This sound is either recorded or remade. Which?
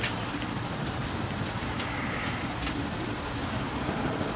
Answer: recorded